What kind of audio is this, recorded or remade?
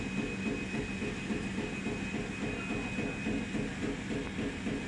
recorded